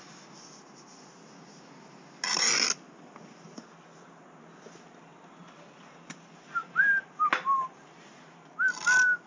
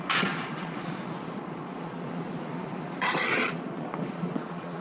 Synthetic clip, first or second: second